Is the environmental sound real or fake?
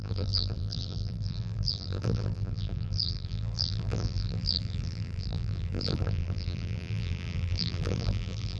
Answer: fake